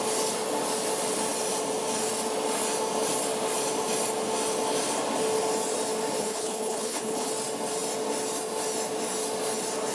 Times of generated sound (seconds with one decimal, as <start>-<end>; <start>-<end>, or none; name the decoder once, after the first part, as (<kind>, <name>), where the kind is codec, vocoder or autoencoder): 6.2-7.3 (codec, HILCodec)